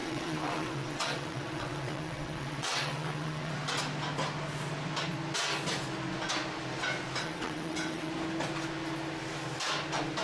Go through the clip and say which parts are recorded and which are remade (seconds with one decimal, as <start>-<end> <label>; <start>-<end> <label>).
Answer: 0.0-3.5 remade; 3.5-7.2 recorded; 7.2-8.1 remade; 8.1-10.2 recorded